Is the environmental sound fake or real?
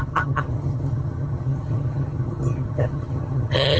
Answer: fake